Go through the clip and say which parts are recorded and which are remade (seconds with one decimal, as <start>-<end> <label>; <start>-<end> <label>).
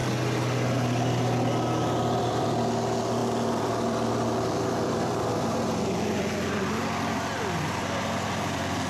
0.0-2.2 recorded; 2.2-8.9 remade